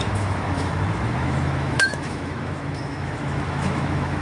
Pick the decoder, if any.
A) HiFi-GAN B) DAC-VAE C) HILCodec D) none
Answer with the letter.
B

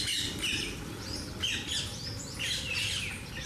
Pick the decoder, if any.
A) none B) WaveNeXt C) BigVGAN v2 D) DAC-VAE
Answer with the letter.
A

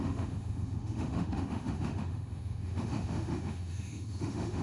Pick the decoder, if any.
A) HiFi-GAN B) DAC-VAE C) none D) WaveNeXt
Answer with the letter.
B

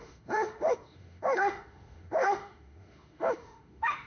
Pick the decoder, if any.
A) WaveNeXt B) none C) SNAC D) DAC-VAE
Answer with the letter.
D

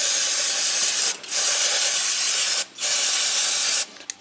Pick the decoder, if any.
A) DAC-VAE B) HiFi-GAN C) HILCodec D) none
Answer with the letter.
D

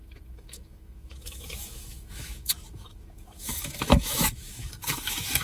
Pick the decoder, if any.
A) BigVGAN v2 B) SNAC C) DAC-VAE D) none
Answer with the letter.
C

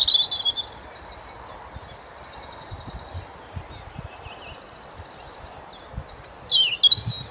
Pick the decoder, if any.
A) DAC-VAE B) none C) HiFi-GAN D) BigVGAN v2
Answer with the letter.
B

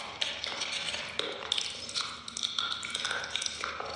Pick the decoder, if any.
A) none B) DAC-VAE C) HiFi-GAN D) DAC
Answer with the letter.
A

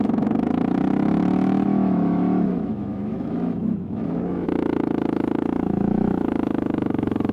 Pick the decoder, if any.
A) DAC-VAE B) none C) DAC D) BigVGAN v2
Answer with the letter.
A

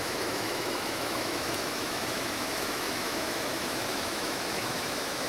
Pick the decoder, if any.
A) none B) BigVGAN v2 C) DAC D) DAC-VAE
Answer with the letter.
D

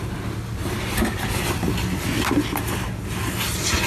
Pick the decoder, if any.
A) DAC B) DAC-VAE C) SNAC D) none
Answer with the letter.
D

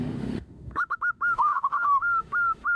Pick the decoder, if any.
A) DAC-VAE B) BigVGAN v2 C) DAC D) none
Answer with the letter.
A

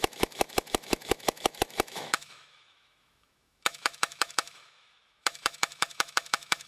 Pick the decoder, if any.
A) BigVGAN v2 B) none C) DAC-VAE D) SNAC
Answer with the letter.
C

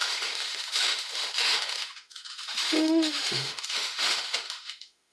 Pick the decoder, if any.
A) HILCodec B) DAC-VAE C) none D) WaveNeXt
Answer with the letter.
B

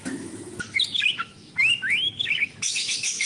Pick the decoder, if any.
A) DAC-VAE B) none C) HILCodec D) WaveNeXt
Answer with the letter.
A